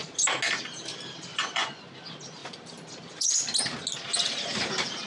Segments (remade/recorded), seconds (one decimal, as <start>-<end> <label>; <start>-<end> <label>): 0.0-1.3 recorded; 1.3-1.8 remade; 1.8-5.1 recorded